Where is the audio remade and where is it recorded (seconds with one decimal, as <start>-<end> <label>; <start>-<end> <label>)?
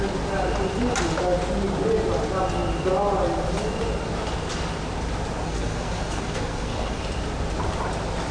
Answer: 0.0-5.4 recorded; 5.4-7.0 remade; 7.0-8.3 recorded